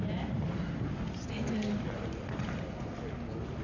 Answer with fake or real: real